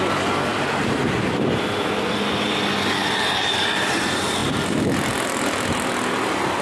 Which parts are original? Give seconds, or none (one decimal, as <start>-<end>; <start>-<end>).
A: 0.0-0.5; 2.5-3.0; 3.6-6.6